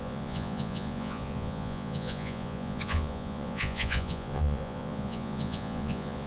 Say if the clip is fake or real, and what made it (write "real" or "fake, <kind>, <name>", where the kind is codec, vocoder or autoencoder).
fake, vocoder, Vocos